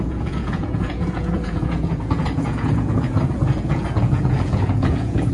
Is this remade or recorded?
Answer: remade